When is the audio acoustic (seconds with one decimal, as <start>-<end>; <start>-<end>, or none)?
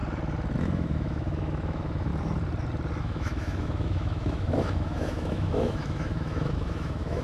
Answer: 0.0-0.6; 2.1-3.0